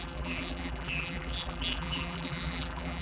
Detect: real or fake fake